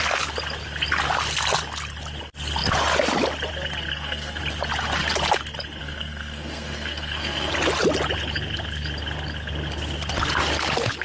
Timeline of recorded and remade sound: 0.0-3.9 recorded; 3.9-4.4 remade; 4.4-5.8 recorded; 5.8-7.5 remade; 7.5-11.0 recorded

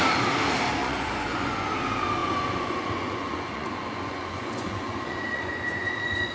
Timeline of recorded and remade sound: 0.0-0.8 recorded; 0.8-1.7 remade; 1.7-2.2 recorded; 2.2-6.3 remade